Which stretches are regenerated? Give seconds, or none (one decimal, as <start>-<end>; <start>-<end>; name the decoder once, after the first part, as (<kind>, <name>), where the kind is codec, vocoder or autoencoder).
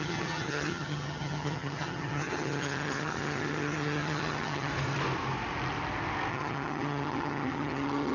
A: 0.0-4.7 (vocoder, HiFi-GAN); 6.3-8.1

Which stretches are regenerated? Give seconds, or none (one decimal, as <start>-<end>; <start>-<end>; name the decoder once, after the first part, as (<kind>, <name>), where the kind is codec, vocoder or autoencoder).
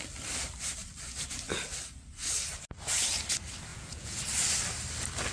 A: 3.7-4.2 (vocoder, Vocos)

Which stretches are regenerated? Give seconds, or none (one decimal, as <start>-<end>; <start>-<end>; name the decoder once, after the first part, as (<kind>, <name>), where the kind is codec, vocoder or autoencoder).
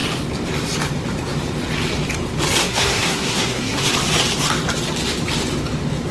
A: 2.6-3.9 (codec, SNAC)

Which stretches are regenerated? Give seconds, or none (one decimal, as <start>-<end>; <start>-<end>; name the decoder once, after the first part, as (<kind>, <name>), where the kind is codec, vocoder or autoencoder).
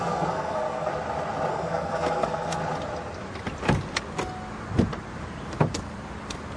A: 0.0-0.9 (codec, SNAC); 1.5-2.6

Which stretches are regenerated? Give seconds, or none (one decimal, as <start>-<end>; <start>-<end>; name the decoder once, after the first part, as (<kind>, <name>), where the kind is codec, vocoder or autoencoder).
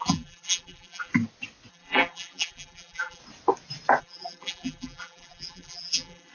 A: 0.0-1.1 (vocoder, BigVGAN v2); 1.7-3.2; 4.0-6.3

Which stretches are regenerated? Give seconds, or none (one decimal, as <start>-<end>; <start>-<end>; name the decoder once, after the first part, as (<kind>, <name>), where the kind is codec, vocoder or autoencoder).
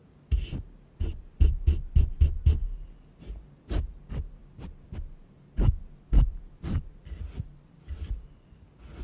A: none